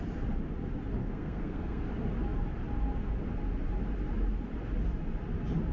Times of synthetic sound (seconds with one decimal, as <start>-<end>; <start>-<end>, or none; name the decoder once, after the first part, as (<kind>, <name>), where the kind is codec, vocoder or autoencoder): 1.0-1.8 (codec, SNAC)